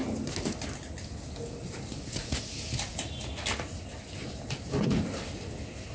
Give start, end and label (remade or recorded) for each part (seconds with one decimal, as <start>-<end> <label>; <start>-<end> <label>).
0.0-5.9 recorded